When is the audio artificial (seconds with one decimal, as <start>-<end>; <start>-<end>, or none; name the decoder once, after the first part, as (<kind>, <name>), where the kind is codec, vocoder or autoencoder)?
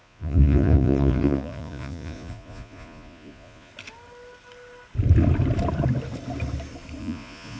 0.0-3.7 (vocoder, Vocos); 7.0-7.6